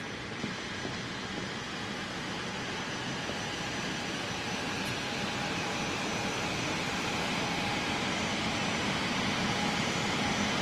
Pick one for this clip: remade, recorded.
recorded